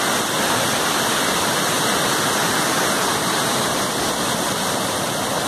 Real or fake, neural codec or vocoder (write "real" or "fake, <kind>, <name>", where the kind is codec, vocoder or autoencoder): real